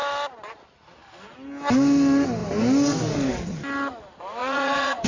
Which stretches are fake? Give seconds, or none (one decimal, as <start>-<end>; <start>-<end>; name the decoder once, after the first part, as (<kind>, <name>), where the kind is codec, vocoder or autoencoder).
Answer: 4.4-5.1 (vocoder, Vocos)